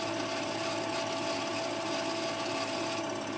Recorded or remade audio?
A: recorded